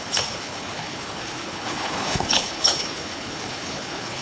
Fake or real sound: fake